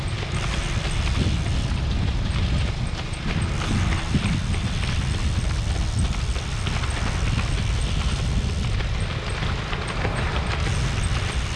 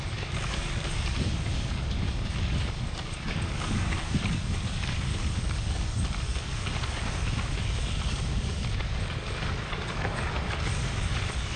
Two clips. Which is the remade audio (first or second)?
second